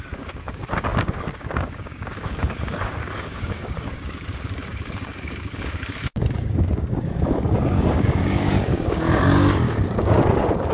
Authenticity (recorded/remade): remade